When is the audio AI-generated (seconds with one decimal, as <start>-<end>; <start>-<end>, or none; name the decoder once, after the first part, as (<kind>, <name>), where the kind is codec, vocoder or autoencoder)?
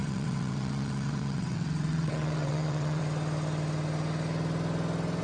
0.0-3.0 (vocoder, WaveNeXt)